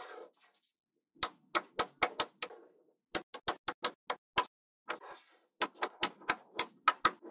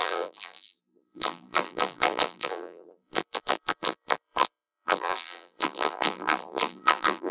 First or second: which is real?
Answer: first